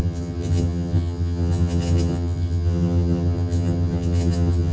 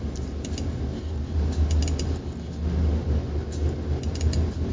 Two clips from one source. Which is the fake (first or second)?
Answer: first